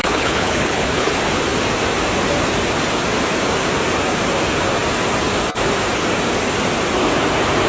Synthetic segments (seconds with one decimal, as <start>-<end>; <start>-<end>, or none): 0.0-1.1